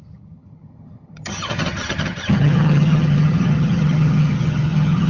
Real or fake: fake